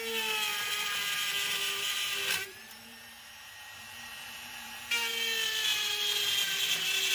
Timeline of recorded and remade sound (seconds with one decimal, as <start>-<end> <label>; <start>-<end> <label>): 0.0-0.5 recorded; 0.5-4.8 remade; 4.8-7.1 recorded